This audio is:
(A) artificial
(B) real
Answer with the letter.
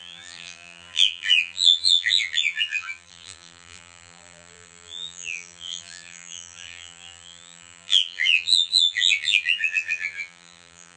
A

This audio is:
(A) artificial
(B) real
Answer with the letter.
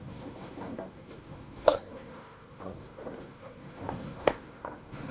A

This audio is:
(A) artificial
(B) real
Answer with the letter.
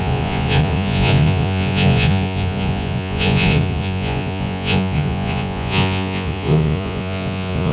A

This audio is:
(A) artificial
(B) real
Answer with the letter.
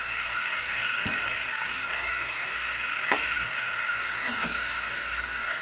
A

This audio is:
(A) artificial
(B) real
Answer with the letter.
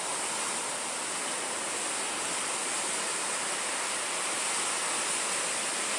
B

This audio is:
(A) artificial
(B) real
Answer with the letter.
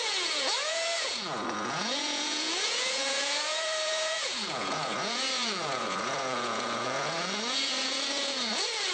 A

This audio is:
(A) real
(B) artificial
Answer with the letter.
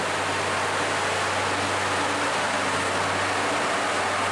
A